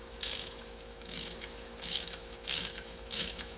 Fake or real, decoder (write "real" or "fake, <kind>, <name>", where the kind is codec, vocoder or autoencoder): fake, autoencoder, DAC-VAE